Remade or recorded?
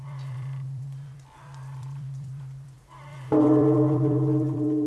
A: remade